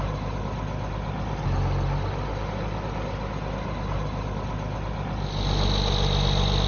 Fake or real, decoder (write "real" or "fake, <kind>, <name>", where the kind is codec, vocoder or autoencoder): real